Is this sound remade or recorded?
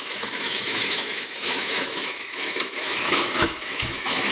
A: remade